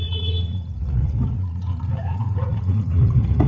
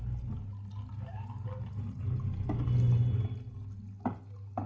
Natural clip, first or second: second